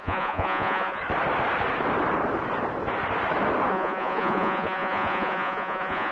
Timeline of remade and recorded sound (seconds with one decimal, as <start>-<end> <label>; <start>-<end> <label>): 0.0-1.0 remade; 1.0-3.7 recorded; 3.7-6.1 remade